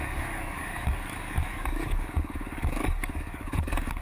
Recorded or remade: remade